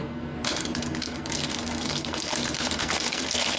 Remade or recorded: remade